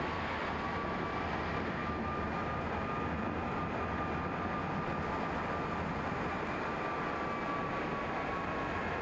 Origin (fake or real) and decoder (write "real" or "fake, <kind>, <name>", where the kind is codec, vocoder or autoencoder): real